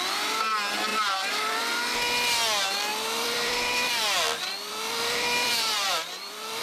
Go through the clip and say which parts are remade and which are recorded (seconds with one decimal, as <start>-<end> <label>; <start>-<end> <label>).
0.0-0.9 recorded; 0.9-1.6 remade; 1.6-2.9 recorded; 2.9-4.0 remade; 4.0-4.5 recorded; 4.5-6.6 remade